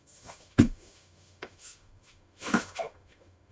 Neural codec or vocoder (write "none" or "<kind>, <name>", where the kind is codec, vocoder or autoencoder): autoencoder, DAC-VAE